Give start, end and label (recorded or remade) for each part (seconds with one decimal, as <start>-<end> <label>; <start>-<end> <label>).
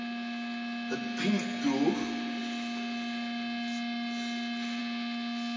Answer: 0.0-5.6 recorded